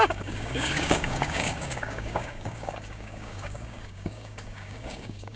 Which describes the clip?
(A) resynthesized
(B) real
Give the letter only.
A